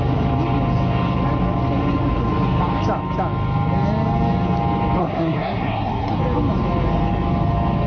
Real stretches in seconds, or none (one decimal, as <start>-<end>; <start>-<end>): 0.0-5.0; 6.2-7.9